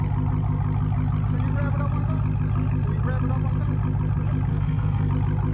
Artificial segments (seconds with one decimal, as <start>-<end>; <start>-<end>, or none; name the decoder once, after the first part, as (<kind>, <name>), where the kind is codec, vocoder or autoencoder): 4.5-5.1 (codec, SNAC)